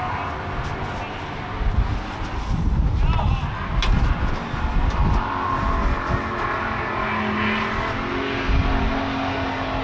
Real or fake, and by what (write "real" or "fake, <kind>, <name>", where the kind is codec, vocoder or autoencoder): real